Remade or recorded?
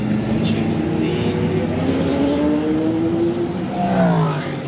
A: recorded